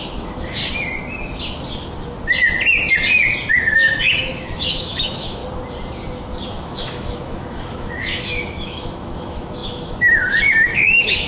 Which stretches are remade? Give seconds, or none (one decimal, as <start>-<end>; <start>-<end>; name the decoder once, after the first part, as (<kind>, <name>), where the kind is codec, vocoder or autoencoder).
0.0-0.6 (autoencoder, DAC-VAE); 3.5-5.4; 6.5-11.3